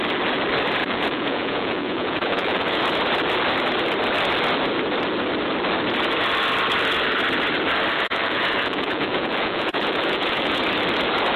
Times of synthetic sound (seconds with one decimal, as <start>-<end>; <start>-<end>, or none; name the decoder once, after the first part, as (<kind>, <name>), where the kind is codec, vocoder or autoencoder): 0.8-2.8 (vocoder, Vocos); 7.9-10.6